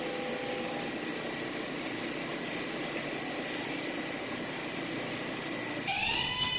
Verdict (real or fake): real